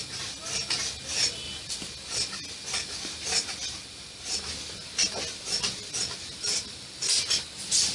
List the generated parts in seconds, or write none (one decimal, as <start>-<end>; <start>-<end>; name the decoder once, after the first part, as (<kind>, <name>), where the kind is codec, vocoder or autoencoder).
none